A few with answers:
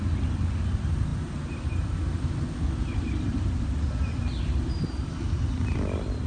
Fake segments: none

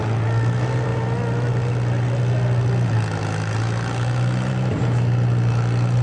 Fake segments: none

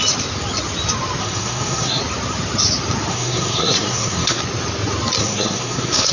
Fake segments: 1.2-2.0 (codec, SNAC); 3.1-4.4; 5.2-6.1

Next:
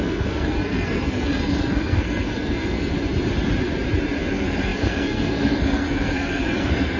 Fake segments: 0.0-2.9 (codec, SNAC); 4.2-7.0

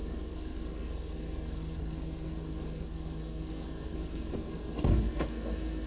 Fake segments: 0.0-5.9 (codec, SNAC)

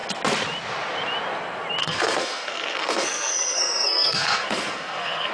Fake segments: 1.8-5.3 (codec, SNAC)